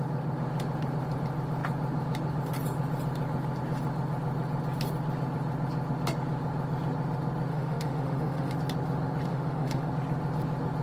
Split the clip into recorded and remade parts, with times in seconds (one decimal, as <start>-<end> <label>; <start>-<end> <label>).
0.0-7.5 recorded; 7.5-8.5 remade; 8.5-9.3 recorded; 9.3-9.9 remade; 9.9-10.8 recorded